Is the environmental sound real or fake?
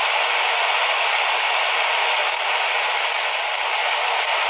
real